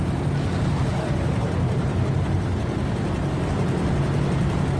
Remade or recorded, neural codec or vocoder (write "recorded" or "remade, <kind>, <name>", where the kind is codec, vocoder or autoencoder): recorded